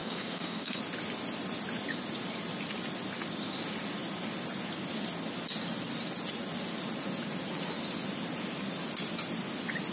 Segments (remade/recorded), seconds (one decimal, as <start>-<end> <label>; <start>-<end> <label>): 0.0-0.8 remade; 0.8-9.9 recorded